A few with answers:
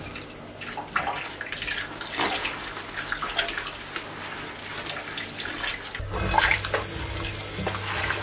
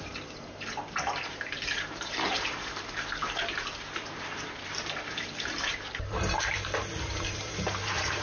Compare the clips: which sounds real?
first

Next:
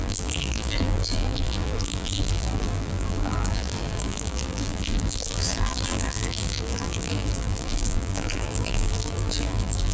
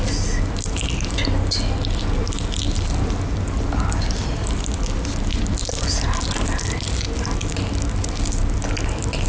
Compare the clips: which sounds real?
second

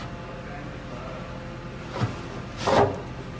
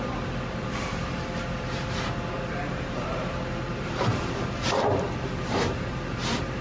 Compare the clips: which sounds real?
first